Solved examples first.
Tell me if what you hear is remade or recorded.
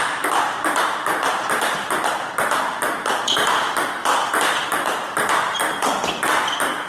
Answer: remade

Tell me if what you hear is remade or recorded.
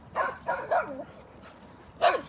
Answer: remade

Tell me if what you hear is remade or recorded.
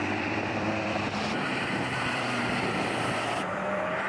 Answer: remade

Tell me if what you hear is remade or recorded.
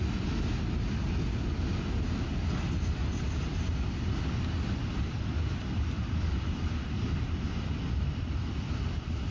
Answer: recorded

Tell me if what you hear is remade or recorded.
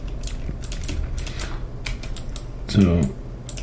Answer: recorded